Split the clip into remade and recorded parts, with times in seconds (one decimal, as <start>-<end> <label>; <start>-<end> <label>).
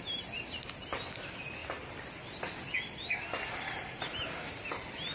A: 0.0-5.1 recorded